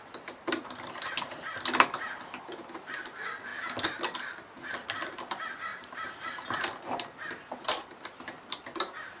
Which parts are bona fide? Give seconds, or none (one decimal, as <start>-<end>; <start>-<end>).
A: 0.0-9.2